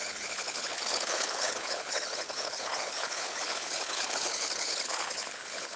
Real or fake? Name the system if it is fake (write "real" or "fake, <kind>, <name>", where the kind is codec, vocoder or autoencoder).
fake, codec, HILCodec